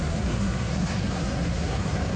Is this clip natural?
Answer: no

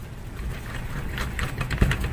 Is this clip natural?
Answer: yes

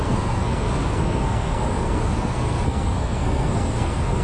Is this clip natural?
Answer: no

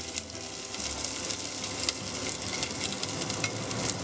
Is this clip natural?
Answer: yes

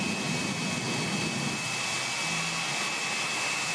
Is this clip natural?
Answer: yes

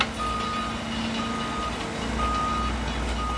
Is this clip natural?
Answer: yes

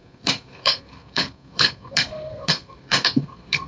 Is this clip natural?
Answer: no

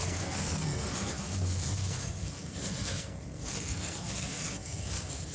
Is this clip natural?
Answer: no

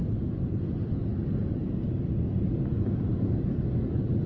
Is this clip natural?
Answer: yes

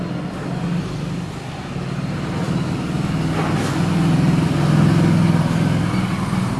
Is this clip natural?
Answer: yes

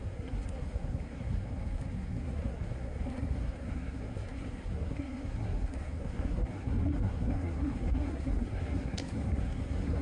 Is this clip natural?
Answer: no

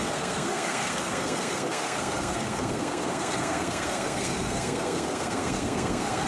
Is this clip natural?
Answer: no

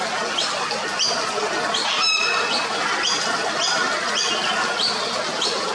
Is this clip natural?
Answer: yes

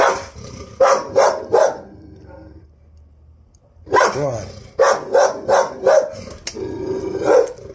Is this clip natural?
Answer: yes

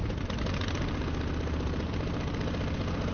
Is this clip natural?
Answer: yes